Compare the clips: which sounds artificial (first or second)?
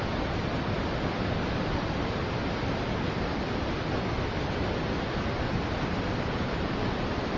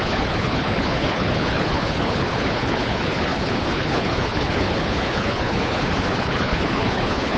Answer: second